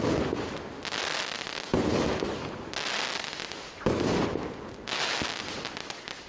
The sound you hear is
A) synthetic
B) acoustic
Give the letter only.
B